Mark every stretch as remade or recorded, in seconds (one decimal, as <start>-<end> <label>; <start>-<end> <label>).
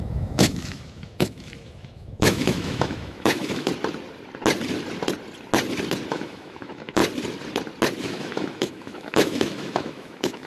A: 0.0-3.7 remade; 3.7-6.1 recorded; 6.1-7.0 remade; 7.0-8.0 recorded; 8.0-10.5 remade